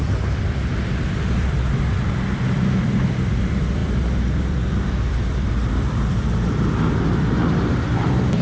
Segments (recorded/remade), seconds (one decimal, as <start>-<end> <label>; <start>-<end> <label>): 0.0-8.4 remade

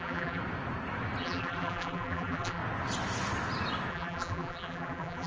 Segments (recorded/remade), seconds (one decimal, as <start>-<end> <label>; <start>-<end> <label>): 0.0-0.4 remade; 0.4-1.2 recorded; 1.2-2.6 remade; 2.6-3.9 recorded; 3.9-5.3 remade

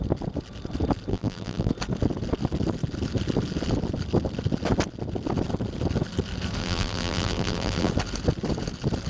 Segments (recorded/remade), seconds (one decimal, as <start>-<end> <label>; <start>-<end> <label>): 0.0-1.1 recorded; 1.1-1.7 remade; 1.7-6.6 recorded; 6.6-7.9 remade; 7.9-9.1 recorded

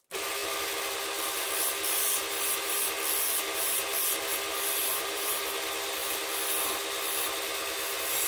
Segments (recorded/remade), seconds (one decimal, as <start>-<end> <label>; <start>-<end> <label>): 0.0-4.8 recorded; 4.8-5.4 remade; 5.4-8.3 recorded

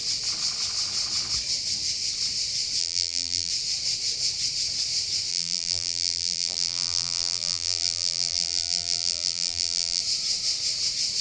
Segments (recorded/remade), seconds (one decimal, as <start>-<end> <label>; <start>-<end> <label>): 0.0-2.8 recorded; 2.8-3.5 remade; 3.5-5.3 recorded; 5.3-10.0 remade; 10.0-11.2 recorded

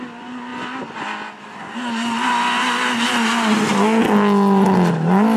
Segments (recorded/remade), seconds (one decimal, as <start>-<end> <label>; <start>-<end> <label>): 0.0-5.4 recorded

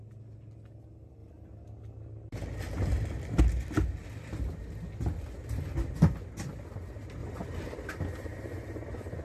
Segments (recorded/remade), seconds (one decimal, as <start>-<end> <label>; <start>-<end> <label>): 0.0-8.3 recorded; 8.3-9.2 remade